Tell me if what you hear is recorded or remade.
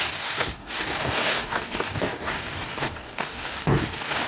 remade